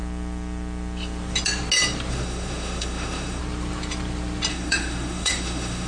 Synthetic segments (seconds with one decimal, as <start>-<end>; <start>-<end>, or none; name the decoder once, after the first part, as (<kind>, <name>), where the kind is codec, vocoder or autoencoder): 2.1-3.4 (autoencoder, DAC-VAE); 4.5-5.9

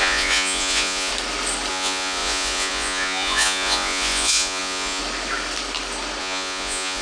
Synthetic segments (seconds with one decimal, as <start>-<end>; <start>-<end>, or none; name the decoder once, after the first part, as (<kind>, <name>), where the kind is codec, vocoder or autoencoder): 0.0-1.1 (vocoder, Vocos); 1.7-5.0; 6.2-7.0